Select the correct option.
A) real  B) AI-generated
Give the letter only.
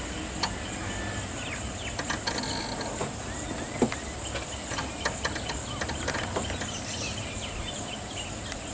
A